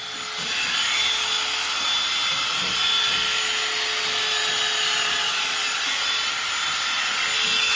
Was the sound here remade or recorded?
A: recorded